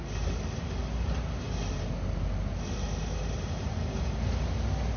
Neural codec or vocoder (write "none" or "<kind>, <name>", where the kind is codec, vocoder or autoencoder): none